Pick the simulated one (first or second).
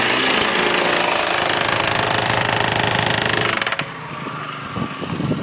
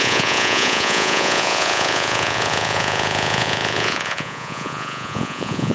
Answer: second